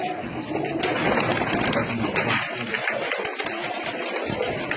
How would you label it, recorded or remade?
recorded